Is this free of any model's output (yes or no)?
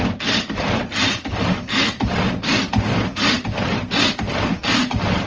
yes